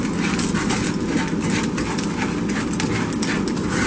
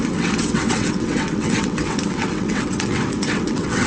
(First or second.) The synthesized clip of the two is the second